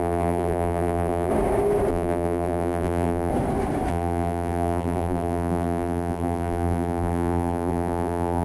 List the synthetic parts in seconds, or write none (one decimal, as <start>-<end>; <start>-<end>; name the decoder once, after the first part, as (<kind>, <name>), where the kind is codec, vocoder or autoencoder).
0.0-1.3 (vocoder, BigVGAN v2); 1.9-3.3; 3.9-8.4